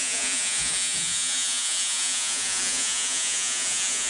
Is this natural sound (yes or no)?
no